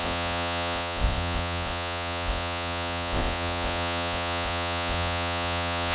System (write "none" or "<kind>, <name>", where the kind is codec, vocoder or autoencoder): vocoder, Vocos